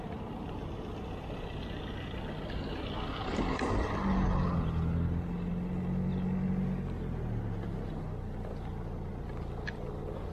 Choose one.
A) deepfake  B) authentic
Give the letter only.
B